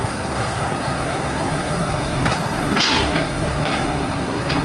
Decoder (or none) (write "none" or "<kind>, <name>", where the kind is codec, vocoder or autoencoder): codec, SNAC